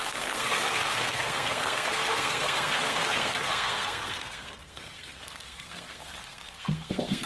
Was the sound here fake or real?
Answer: fake